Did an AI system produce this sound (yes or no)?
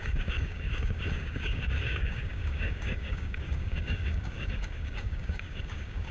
yes